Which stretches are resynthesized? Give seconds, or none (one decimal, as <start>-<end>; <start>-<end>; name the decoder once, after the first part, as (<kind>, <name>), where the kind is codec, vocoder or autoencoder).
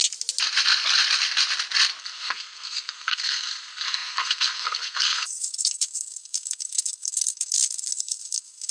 2.0-8.7 (codec, SNAC)